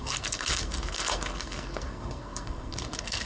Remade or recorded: remade